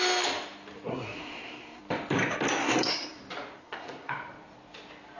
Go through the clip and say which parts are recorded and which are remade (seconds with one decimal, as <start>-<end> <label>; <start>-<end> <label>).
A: 0.0-0.9 recorded; 0.9-1.8 remade; 1.8-2.6 recorded; 2.6-3.2 remade; 3.2-3.6 recorded; 3.6-4.1 remade; 4.1-5.2 recorded